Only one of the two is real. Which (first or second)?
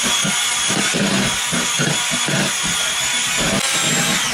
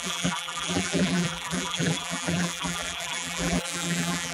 first